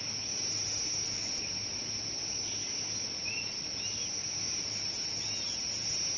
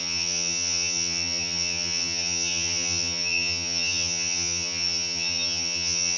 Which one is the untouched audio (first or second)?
first